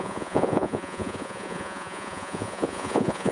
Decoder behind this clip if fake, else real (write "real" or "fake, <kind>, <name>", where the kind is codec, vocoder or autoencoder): fake, vocoder, Vocos